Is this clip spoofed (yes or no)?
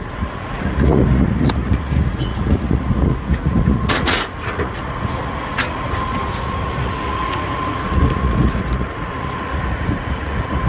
yes